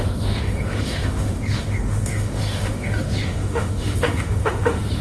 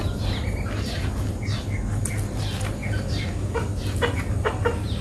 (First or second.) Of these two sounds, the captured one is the second